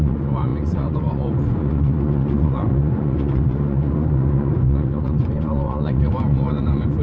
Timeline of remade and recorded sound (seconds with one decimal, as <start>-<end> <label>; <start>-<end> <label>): 0.0-7.0 remade